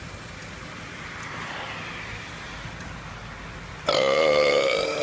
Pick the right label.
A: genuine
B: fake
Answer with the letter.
A